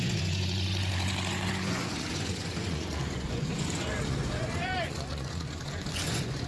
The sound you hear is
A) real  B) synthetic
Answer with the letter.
B